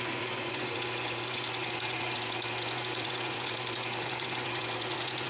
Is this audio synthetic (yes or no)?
yes